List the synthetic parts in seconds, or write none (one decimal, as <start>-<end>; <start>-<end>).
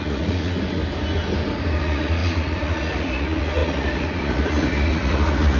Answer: 0.0-0.8; 1.8-5.6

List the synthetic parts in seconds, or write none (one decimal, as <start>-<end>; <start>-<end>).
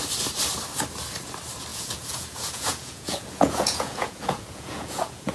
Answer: 1.7-5.3